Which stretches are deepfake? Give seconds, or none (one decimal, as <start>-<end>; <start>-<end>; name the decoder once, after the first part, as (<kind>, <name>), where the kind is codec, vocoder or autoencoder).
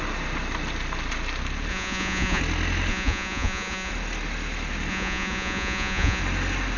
1.7-2.4 (vocoder, Vocos); 2.9-3.9; 4.9-6.2